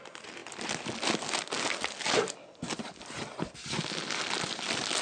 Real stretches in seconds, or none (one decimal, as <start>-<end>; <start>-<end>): 0.0-5.0